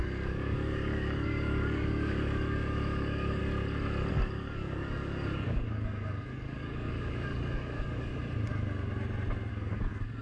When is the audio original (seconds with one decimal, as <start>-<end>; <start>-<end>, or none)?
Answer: 3.4-4.1; 8.1-9.5